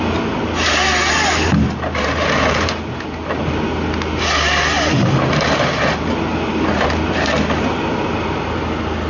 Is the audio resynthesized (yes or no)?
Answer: no